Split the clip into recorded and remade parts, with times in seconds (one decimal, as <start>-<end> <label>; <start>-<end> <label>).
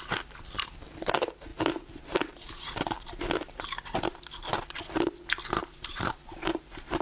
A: 0.0-1.5 recorded; 1.5-4.1 remade; 4.1-5.6 recorded; 5.6-6.1 remade; 6.1-7.0 recorded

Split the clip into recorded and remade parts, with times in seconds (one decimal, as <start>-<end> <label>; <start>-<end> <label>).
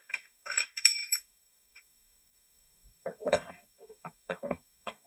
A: 0.0-5.1 remade